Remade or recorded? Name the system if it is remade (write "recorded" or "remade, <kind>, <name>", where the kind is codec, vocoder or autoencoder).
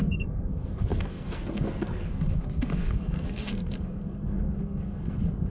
remade, codec, SNAC